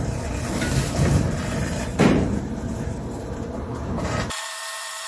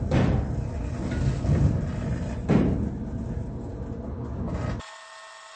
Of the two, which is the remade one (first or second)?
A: first